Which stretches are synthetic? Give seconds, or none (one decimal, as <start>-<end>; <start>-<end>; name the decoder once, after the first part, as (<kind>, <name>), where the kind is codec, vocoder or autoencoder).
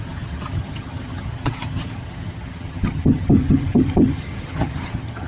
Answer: 0.0-5.3 (vocoder, HiFi-GAN)